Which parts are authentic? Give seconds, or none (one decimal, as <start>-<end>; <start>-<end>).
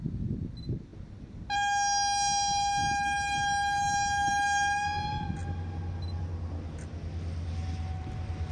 0.0-8.5